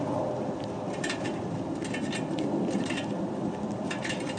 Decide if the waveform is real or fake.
fake